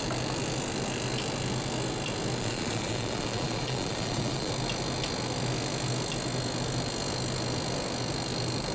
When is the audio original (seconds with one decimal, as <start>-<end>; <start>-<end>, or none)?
0.0-2.4; 4.5-8.7